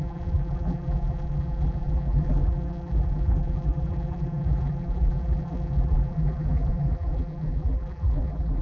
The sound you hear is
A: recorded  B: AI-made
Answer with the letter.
B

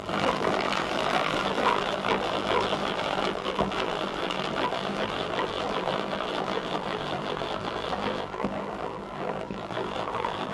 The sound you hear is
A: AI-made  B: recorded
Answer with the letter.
A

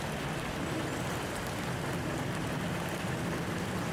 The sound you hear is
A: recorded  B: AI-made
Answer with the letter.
A